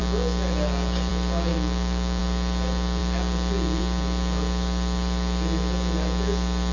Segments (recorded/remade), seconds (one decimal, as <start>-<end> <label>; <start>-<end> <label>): 0.0-1.5 recorded; 1.5-2.2 remade; 2.2-6.7 recorded